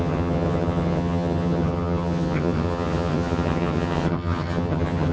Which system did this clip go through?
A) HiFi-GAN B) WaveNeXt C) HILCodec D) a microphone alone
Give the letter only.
A